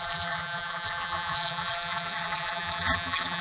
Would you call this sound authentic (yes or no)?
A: no